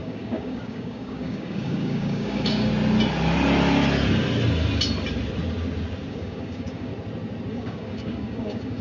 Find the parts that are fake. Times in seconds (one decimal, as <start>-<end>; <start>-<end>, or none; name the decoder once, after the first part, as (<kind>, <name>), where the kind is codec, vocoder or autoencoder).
0.0-2.7 (codec, DAC); 6.1-6.9; 7.5-8.8